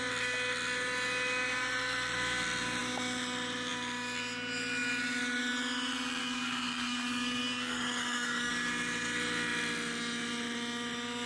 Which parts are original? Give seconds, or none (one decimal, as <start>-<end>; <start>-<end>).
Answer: 0.0-6.2; 8.5-11.3